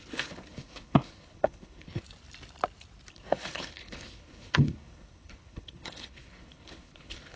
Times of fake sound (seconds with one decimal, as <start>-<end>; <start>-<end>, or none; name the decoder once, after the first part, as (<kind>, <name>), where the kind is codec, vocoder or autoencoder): 0.0-2.0 (codec, HILCodec); 3.1-7.4